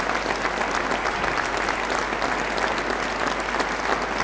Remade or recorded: recorded